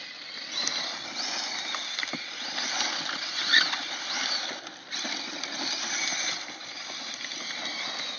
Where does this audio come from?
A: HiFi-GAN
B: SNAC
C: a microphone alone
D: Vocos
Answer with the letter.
C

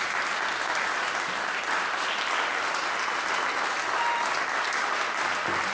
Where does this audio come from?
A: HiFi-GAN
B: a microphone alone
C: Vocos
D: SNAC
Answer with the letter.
B